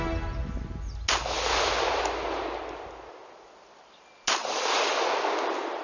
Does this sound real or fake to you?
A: real